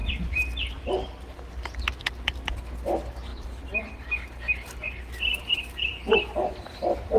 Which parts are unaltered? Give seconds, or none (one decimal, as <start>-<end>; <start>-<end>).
0.0-7.2